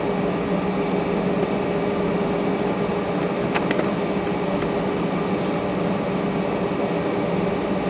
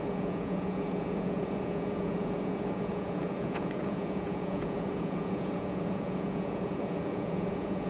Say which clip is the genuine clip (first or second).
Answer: first